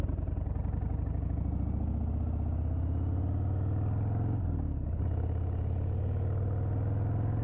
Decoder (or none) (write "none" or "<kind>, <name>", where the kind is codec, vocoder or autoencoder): none